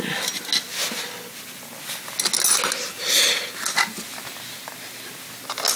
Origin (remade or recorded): recorded